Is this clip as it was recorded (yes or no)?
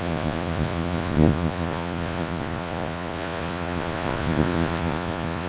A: no